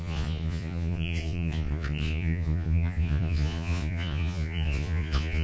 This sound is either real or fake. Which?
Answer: fake